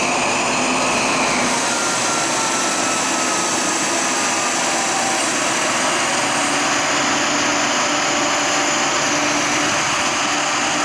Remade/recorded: recorded